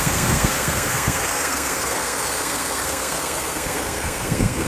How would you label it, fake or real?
fake